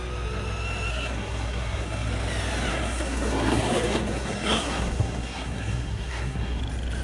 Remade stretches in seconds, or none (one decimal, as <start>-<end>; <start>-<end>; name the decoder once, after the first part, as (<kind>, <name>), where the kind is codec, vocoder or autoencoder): 0.9-2.1 (codec, SNAC); 2.7-6.6